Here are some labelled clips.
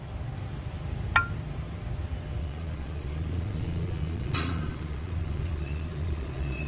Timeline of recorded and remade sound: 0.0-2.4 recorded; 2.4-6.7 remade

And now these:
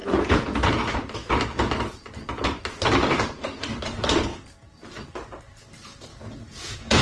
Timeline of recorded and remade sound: 0.0-0.7 remade; 0.7-6.1 recorded; 6.1-7.0 remade